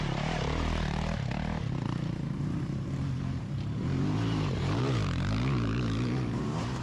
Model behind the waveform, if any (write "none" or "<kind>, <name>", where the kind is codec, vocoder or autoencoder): vocoder, BigVGAN v2